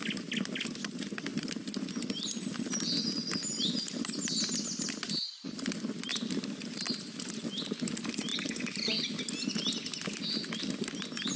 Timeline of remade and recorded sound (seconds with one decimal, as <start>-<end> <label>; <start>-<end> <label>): 0.0-6.1 recorded; 6.1-7.3 remade; 7.3-8.3 recorded; 8.3-8.9 remade; 8.9-11.4 recorded